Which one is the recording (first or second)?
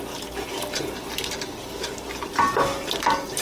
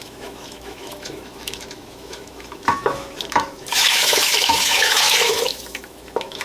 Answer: first